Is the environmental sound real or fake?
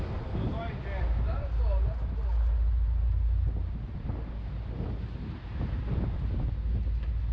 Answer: real